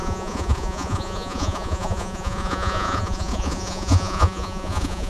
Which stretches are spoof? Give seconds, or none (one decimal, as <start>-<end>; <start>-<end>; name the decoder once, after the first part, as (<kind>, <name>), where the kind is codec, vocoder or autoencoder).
0.0-5.1 (vocoder, Vocos)